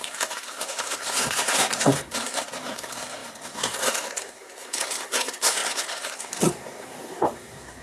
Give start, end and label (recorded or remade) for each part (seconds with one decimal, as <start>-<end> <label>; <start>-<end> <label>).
0.0-7.8 remade